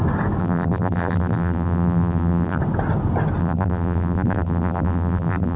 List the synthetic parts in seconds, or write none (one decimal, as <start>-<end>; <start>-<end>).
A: 0.4-2.6; 3.4-5.6

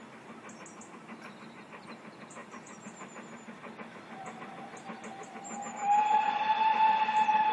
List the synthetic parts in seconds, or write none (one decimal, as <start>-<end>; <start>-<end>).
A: 0.0-7.5

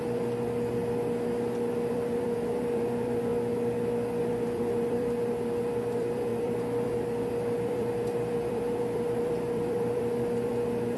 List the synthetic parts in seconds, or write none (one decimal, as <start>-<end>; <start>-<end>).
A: 0.0-0.8; 1.9-3.3; 4.2-11.0